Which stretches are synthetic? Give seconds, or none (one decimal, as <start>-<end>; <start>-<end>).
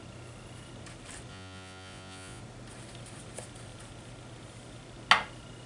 1.3-2.4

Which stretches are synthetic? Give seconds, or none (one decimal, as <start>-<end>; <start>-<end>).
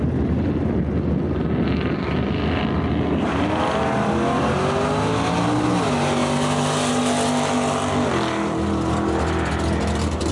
none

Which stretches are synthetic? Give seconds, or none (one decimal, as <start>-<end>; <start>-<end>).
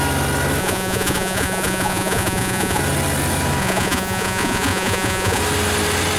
0.6-2.8; 3.6-5.4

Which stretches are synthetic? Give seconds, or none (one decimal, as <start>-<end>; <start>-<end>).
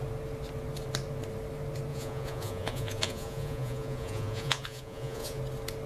1.9-5.4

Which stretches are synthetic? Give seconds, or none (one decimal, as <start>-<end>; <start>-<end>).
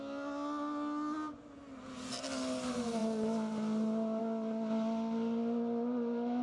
none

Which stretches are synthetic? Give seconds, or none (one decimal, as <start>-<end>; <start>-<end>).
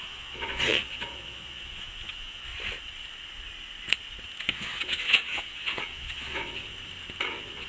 0.0-2.5; 4.5-6.7; 7.3-7.7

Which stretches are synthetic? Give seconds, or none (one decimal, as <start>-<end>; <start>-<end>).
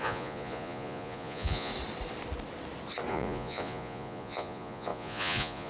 0.0-1.7; 3.1-5.7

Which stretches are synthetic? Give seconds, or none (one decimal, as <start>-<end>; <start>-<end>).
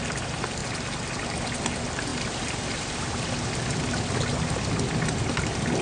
none